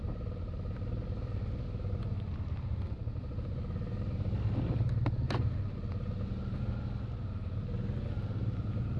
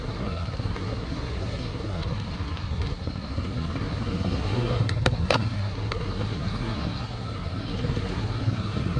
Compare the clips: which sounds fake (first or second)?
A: second